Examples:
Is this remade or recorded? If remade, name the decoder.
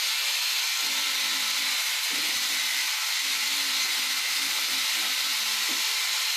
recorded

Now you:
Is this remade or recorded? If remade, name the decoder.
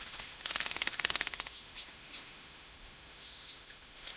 remade, autoencoder, DAC-VAE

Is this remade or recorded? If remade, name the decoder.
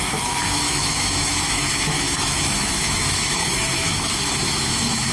remade, autoencoder, DAC-VAE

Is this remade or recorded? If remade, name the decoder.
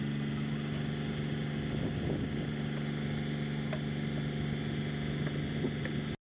recorded